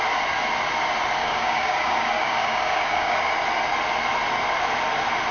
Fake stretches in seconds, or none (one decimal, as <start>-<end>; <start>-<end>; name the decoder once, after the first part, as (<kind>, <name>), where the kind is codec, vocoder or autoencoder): 1.2-3.3 (codec, DAC)